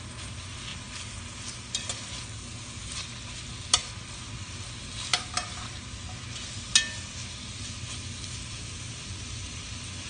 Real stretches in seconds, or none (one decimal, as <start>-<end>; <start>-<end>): 0.0-10.1